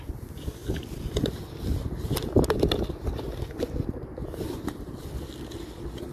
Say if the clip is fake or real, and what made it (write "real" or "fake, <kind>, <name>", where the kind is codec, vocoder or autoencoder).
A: real